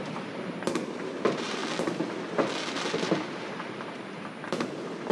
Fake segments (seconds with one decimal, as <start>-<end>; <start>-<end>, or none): 0.0-1.6; 3.0-5.1